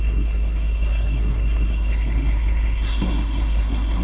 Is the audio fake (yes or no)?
yes